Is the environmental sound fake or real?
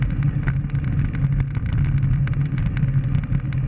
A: real